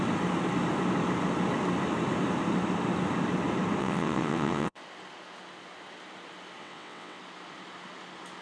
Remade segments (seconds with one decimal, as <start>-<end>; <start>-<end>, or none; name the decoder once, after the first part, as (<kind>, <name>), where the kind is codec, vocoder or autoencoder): 3.8-4.8 (vocoder, WaveNeXt); 6.6-7.2